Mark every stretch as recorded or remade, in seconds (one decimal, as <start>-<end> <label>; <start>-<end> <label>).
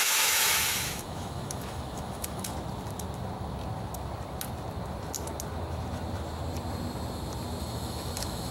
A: 0.0-2.5 remade; 2.5-7.6 recorded; 7.6-8.5 remade